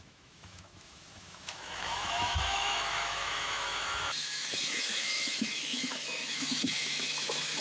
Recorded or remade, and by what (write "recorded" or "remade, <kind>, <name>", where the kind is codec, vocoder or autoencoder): remade, autoencoder, DAC-VAE